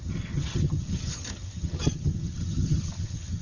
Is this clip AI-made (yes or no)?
yes